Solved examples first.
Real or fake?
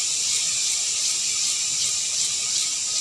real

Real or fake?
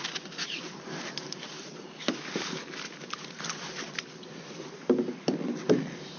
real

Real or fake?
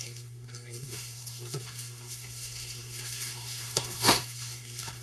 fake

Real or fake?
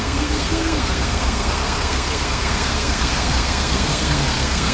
fake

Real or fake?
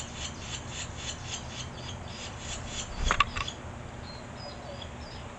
real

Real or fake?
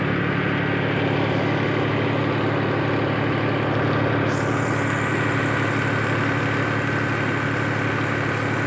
real